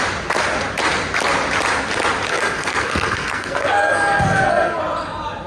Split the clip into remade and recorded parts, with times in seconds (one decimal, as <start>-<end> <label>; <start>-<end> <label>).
0.0-2.3 recorded; 2.3-4.8 remade; 4.8-5.5 recorded